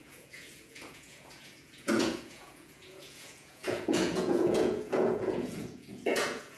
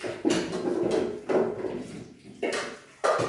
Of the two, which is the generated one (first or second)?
first